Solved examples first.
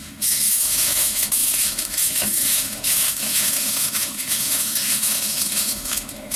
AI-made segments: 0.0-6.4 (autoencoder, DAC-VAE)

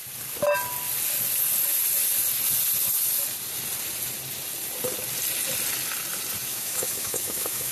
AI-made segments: 6.5-7.7 (autoencoder, DAC-VAE)